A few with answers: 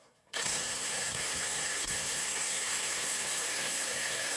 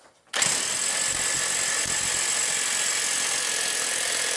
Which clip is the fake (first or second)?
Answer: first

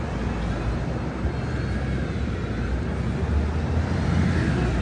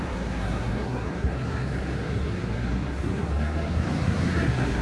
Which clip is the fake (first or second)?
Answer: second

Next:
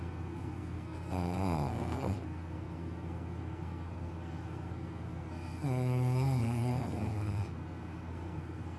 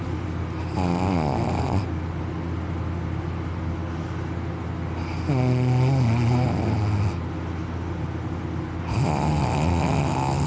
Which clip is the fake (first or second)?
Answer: first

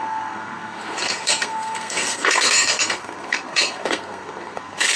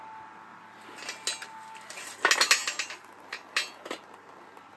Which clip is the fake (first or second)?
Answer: first